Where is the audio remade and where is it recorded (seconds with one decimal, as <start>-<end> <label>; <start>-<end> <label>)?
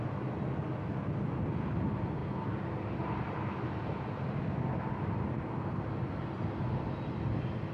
0.0-7.7 recorded